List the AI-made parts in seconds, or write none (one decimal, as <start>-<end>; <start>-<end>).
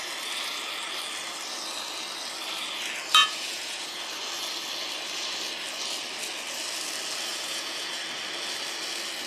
3.2-4.0; 7.3-7.9